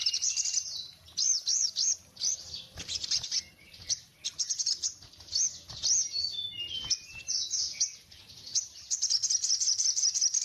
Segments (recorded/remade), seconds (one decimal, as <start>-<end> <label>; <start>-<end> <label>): 0.0-3.4 remade; 3.4-4.3 recorded; 4.3-5.8 remade; 5.8-10.4 recorded